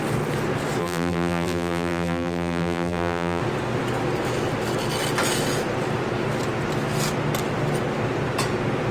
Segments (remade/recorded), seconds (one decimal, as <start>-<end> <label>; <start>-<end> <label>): 0.0-0.8 recorded; 0.8-3.4 remade; 3.4-8.9 recorded